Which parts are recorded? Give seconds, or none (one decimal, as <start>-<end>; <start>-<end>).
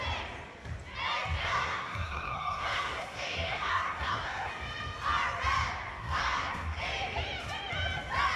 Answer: 0.0-1.4; 4.5-6.0; 6.8-8.4